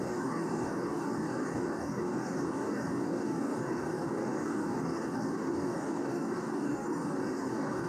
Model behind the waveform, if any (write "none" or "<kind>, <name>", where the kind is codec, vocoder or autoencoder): codec, DAC